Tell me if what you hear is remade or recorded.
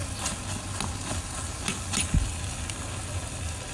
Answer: recorded